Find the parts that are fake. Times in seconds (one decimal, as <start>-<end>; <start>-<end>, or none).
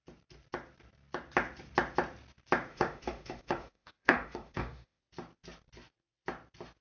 2.7-5.0